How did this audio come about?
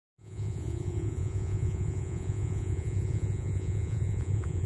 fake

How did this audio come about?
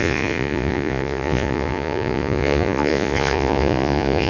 fake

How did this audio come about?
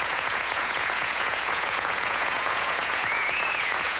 fake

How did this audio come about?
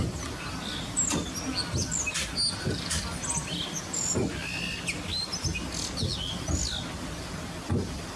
real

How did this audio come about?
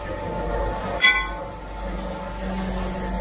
real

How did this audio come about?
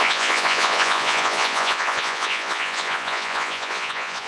fake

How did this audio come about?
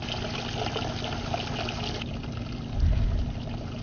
real